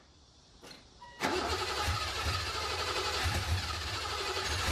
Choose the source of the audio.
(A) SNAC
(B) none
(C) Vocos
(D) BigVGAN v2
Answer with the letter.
D